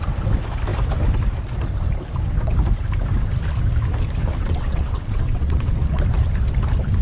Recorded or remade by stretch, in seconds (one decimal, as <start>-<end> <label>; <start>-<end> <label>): 0.0-4.4 recorded; 4.4-6.0 remade; 6.0-7.0 recorded